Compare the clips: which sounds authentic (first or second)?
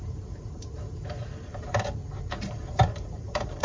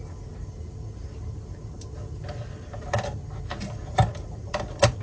second